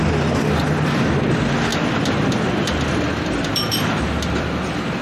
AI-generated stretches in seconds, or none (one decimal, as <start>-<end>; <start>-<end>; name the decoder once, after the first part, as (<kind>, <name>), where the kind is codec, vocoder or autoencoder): 0.0-1.7 (vocoder, BigVGAN v2); 3.5-5.0